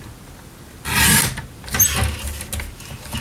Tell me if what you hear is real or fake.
real